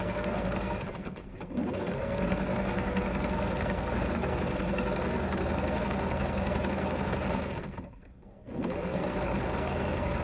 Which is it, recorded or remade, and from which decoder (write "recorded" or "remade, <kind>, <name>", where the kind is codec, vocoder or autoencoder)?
remade, codec, SNAC